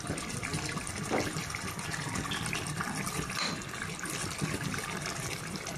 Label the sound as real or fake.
real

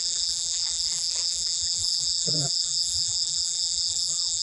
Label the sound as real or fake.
fake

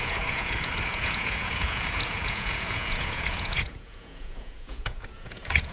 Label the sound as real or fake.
fake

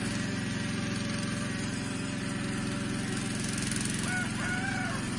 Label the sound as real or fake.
real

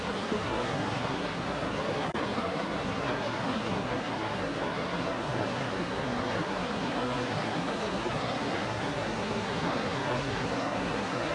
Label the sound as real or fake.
fake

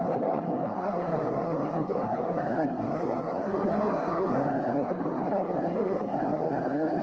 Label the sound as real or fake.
fake